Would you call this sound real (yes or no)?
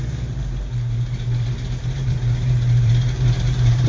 no